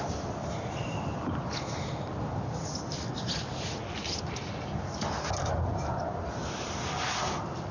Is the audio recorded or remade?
recorded